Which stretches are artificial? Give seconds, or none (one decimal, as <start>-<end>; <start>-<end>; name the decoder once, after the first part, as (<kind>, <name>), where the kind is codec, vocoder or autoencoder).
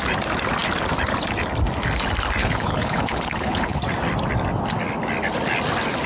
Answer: 2.4-3.8 (codec, HILCodec)